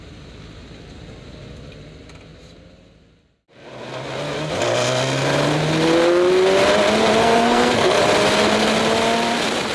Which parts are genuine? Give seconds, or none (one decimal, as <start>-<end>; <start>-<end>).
0.0-7.2; 8.0-9.7